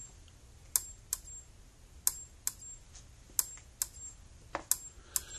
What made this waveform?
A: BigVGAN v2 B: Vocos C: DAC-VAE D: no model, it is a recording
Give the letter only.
D